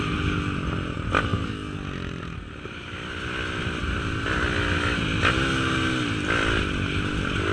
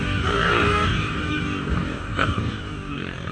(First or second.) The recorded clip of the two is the first